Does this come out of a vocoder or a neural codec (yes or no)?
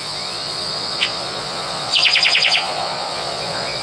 yes